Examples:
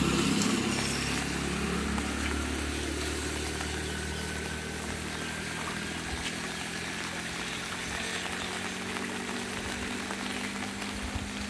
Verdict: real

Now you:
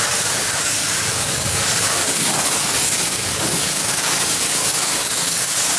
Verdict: fake